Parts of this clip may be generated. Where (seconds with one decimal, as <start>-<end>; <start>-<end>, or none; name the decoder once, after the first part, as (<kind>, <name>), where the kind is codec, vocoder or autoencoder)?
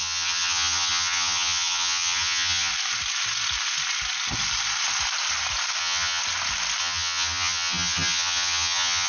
0.0-2.7 (vocoder, HiFi-GAN); 5.8-6.2; 6.8-9.1